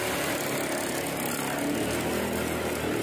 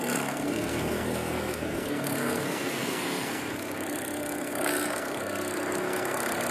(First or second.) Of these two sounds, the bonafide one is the first